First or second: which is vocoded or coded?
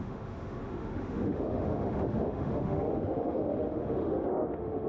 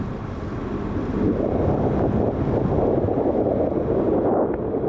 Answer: first